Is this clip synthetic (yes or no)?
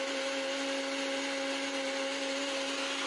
no